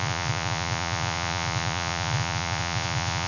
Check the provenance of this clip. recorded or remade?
remade